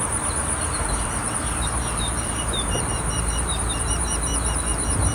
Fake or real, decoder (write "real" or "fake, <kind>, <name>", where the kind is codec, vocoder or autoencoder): fake, vocoder, BigVGAN v2